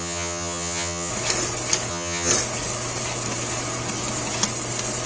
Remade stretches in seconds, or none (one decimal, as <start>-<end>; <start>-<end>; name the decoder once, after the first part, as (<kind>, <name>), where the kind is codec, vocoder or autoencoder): 0.0-1.1 (vocoder, HiFi-GAN); 1.9-2.3